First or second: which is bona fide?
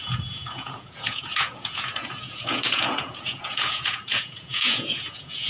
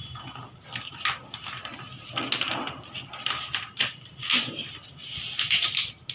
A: second